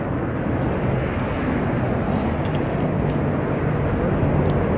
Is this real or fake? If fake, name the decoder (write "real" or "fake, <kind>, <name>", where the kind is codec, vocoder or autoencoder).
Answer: real